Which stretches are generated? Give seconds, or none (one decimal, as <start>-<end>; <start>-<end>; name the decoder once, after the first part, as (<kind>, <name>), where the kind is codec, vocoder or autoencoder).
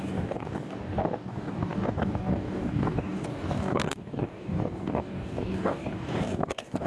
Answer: 0.0-6.9 (codec, DAC)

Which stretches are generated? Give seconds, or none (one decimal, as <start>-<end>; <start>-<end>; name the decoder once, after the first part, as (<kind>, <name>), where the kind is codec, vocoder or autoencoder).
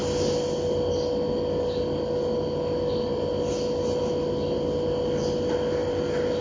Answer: none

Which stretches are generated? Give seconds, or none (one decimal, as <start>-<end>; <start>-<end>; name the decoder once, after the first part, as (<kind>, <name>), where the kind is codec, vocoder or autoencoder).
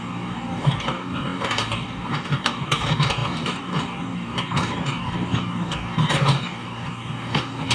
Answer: 0.0-7.7 (codec, DAC)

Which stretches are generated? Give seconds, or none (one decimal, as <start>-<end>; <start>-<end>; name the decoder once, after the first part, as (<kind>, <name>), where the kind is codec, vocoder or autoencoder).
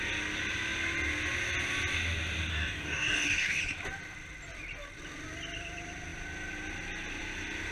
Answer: 2.5-3.6 (codec, DAC)